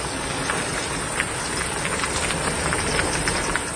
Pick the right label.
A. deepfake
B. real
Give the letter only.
B